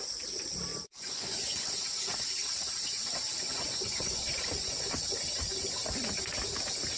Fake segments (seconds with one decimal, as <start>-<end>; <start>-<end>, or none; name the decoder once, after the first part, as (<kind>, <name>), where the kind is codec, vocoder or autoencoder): 0.7-4.9 (vocoder, Vocos)